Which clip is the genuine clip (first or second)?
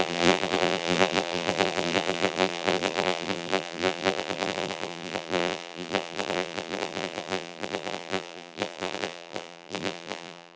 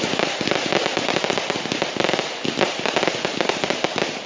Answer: second